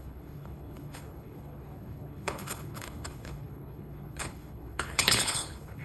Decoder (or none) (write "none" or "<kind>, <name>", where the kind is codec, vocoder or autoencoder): codec, HILCodec